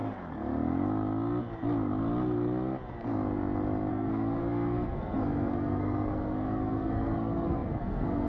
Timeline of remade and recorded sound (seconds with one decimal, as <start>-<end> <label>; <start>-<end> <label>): 0.0-3.9 recorded; 3.9-8.3 remade